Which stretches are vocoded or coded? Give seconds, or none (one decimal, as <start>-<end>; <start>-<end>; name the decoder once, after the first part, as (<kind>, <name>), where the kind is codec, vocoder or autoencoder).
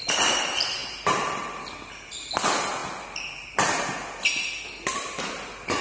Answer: none